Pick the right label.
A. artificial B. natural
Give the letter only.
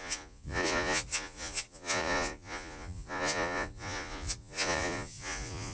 A